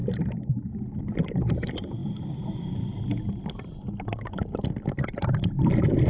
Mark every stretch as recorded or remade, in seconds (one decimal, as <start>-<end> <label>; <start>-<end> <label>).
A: 0.0-6.1 recorded